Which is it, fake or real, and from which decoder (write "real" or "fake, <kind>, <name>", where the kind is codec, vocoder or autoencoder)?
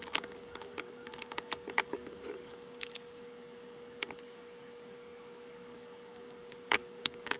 fake, codec, DAC